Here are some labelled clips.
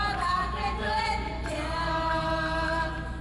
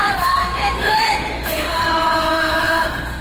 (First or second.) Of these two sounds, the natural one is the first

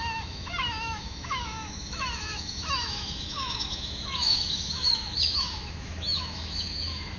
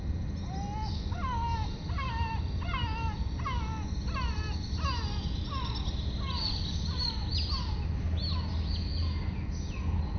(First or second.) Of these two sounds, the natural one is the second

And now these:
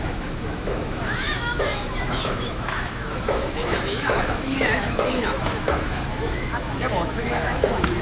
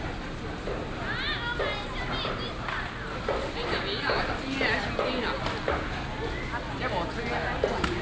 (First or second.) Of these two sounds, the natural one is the second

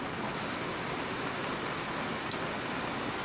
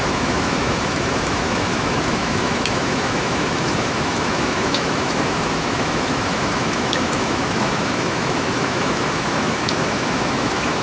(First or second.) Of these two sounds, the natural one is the first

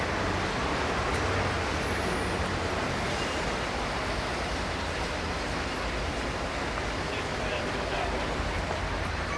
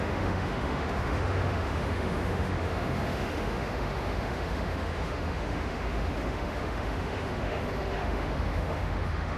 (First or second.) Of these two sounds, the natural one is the first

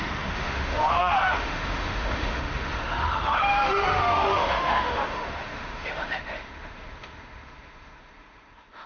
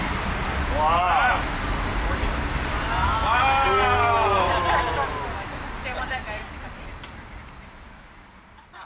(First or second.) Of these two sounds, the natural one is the second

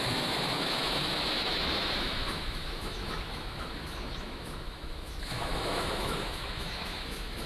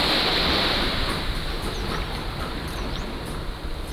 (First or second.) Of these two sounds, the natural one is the second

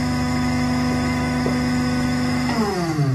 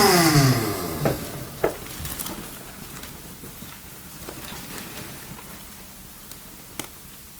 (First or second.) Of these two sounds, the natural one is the second